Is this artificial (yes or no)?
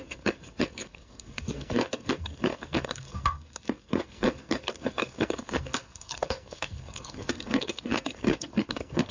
yes